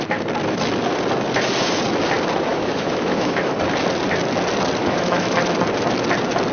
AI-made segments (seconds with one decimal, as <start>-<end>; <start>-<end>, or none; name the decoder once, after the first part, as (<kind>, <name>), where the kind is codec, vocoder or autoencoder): 2.5-3.5 (autoencoder, DAC-VAE); 4.8-5.4